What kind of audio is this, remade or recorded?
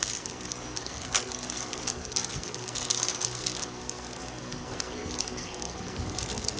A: remade